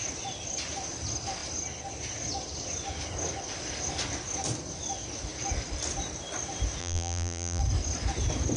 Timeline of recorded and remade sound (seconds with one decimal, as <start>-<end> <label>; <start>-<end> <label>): 0.0-6.8 recorded; 6.8-7.6 remade; 7.6-8.6 recorded